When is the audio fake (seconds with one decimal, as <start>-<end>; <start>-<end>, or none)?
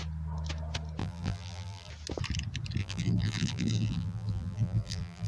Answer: 1.0-1.9; 2.8-5.3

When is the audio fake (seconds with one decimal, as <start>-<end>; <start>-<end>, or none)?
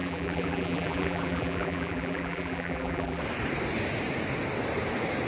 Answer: 0.0-3.2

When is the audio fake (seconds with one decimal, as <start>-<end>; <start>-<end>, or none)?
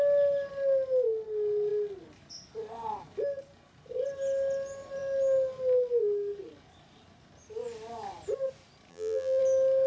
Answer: 8.9-9.4